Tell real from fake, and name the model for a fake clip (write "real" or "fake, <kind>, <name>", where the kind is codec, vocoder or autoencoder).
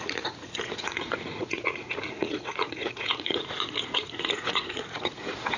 fake, vocoder, Vocos